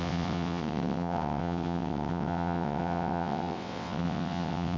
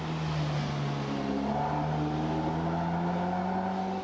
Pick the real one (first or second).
second